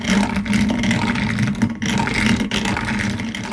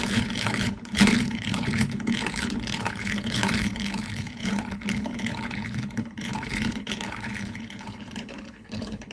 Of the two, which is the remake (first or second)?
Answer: second